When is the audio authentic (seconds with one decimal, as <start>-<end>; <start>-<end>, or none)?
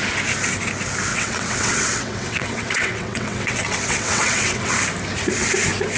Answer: 0.0-1.1; 4.7-6.0